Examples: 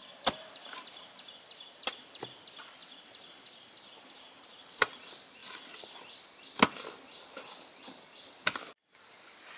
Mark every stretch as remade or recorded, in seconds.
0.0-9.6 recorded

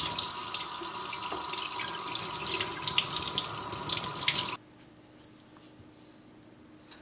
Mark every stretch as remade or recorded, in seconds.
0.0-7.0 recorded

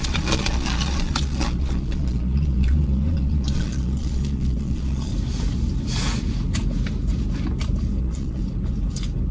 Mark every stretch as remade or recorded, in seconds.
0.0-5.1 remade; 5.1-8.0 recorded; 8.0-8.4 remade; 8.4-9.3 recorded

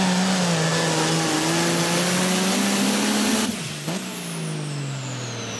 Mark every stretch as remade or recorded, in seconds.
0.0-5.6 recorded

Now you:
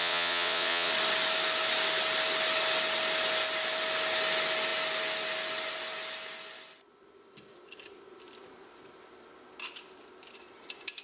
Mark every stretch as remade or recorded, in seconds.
0.0-0.9 remade; 0.9-11.0 recorded

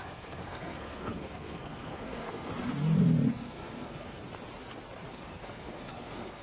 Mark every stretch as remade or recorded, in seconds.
0.0-2.5 remade; 2.5-3.3 recorded; 3.3-4.2 remade; 4.2-5.1 recorded; 5.1-6.4 remade

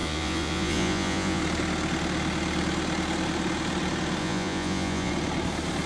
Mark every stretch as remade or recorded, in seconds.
0.0-1.4 remade; 1.4-4.2 recorded; 4.2-5.1 remade; 5.1-5.9 recorded